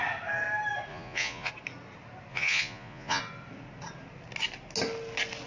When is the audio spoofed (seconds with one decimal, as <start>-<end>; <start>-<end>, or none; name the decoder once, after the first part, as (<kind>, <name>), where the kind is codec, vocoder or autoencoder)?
0.9-1.5 (vocoder, Vocos); 2.3-3.2